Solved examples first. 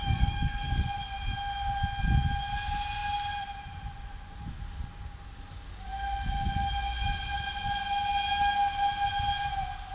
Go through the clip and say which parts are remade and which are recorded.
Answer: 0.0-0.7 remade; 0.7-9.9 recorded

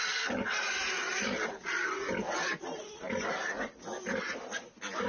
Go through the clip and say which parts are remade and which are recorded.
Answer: 0.0-5.1 recorded

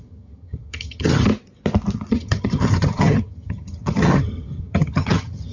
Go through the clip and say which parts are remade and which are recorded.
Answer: 0.0-1.3 remade; 1.3-2.1 recorded; 2.1-5.5 remade

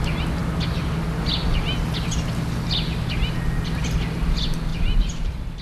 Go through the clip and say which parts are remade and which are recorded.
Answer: 0.0-4.7 recorded; 4.7-5.6 remade

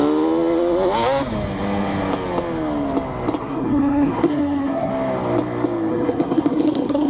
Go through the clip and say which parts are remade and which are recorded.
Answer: 0.0-3.4 recorded; 3.4-4.9 remade; 4.9-5.9 recorded; 5.9-7.1 remade